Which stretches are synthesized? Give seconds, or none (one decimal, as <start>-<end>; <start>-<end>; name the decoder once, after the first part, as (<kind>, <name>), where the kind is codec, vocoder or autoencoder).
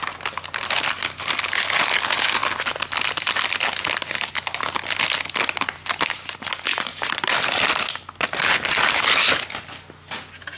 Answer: 6.9-7.7 (vocoder, BigVGAN v2)